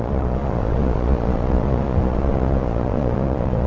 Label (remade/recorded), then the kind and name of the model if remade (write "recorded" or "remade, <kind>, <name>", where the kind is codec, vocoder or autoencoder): remade, vocoder, Vocos